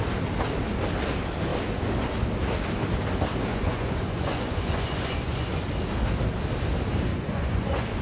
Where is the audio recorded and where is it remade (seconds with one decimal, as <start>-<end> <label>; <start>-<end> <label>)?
0.0-3.5 recorded; 3.5-5.6 remade; 5.6-7.1 recorded; 7.1-8.0 remade